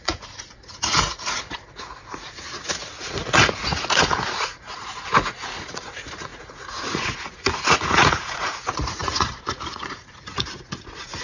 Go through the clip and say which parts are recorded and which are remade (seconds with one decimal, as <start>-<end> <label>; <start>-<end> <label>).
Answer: 0.0-11.2 remade

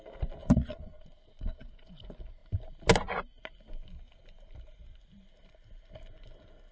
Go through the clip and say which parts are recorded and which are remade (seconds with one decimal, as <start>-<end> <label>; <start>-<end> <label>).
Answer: 0.0-0.4 recorded; 0.4-1.9 remade; 1.9-6.7 recorded

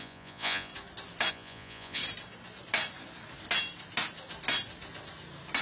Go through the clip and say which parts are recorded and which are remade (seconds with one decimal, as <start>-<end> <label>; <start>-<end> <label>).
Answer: 0.0-0.7 remade; 0.7-1.3 recorded; 1.3-2.0 remade; 2.0-5.6 recorded

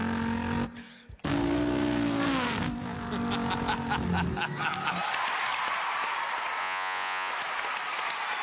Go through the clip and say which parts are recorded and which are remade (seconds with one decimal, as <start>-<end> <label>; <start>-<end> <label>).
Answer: 0.0-6.6 recorded; 6.6-7.3 remade; 7.3-8.4 recorded

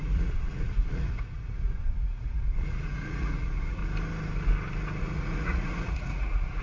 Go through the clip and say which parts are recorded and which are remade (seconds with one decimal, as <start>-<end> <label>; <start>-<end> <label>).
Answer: 0.0-3.8 remade; 3.8-5.0 recorded; 5.0-6.6 remade